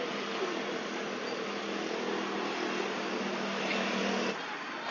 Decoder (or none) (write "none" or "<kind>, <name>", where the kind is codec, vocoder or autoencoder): none